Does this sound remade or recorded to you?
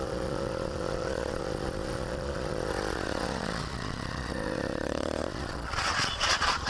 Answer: remade